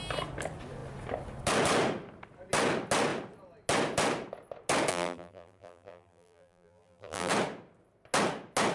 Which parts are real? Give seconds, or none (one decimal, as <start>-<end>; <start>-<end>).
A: 0.0-4.9; 7.3-8.7